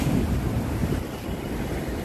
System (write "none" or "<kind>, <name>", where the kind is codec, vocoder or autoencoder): none